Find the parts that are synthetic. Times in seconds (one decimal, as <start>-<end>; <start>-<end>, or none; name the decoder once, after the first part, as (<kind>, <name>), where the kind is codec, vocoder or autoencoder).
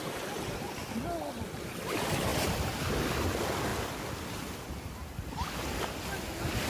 2.3-2.9 (vocoder, BigVGAN v2); 3.7-5.6